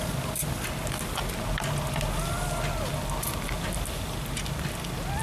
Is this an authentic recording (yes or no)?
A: yes